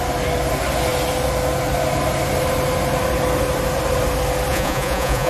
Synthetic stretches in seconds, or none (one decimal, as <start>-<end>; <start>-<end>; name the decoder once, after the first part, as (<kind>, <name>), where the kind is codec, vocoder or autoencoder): 4.5-5.3 (vocoder, Vocos)